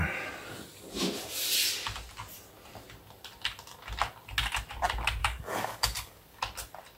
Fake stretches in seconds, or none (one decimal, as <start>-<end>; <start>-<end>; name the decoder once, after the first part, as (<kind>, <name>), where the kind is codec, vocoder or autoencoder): 5.2-6.4 (codec, DAC)